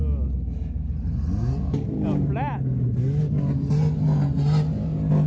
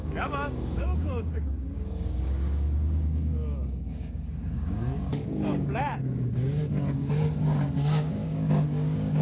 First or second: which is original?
first